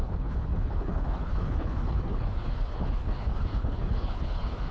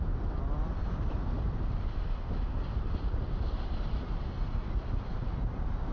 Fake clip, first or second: first